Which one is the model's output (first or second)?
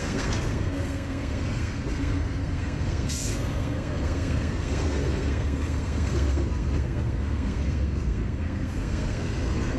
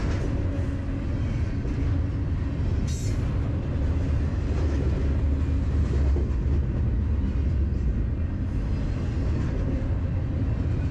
first